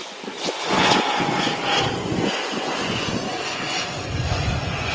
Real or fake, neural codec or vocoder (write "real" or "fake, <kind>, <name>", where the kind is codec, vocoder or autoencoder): fake, vocoder, Vocos